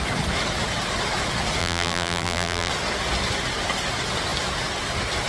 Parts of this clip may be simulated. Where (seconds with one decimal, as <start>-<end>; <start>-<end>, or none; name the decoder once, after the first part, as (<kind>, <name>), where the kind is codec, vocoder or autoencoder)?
1.6-2.7 (vocoder, BigVGAN v2)